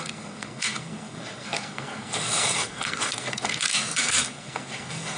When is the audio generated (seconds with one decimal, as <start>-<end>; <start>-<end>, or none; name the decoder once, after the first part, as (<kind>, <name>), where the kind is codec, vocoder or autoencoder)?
0.0-5.2 (codec, SNAC)